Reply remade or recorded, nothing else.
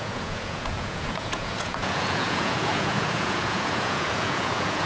remade